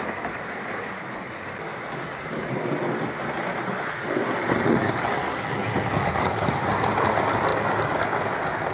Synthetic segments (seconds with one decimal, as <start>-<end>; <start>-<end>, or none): none